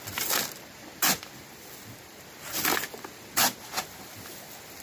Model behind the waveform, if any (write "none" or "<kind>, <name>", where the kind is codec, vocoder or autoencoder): vocoder, BigVGAN v2